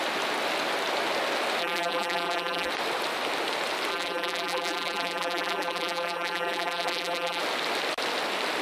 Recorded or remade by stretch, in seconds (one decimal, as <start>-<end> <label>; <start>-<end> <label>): 0.0-1.6 recorded; 1.6-2.7 remade; 2.7-3.9 recorded; 3.9-7.4 remade; 7.4-8.6 recorded